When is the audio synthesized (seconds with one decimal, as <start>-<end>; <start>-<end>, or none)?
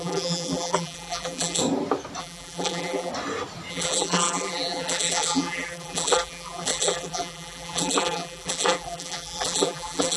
0.0-1.6; 2.2-3.1; 3.7-10.2